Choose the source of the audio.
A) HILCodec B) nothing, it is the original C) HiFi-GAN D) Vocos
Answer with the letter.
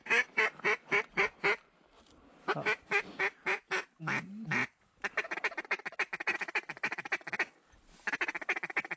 B